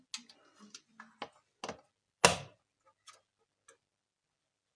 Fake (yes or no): no